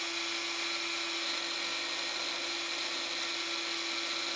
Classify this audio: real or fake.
real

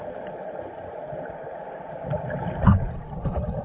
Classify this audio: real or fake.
real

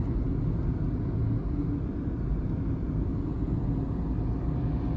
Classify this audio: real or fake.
real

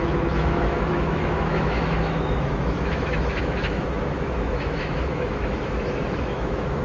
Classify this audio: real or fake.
fake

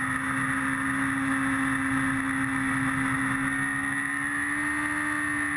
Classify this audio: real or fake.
real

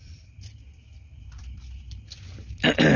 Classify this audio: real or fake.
fake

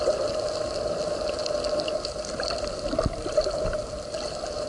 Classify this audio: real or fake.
real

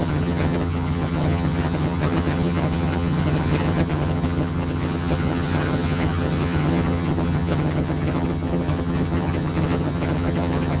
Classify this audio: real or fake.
fake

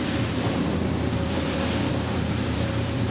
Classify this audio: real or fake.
fake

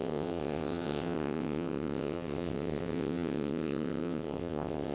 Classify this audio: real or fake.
fake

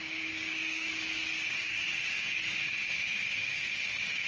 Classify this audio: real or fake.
fake